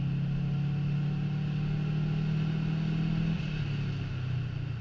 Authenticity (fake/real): real